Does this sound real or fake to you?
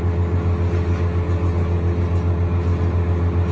real